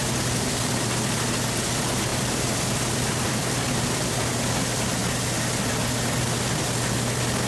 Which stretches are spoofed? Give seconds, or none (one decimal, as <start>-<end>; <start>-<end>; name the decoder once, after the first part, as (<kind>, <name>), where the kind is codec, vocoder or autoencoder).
0.0-0.7 (vocoder, BigVGAN v2); 2.1-4.3